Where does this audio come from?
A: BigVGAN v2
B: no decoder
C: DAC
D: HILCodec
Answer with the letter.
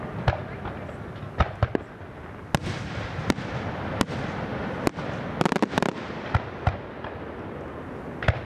B